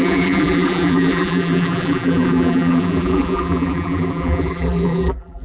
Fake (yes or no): yes